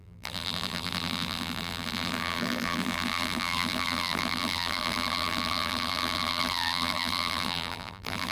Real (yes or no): no